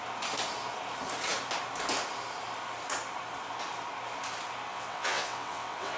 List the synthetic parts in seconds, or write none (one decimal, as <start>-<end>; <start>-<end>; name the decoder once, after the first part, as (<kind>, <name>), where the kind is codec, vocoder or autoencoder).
4.7-6.0 (vocoder, WaveNeXt)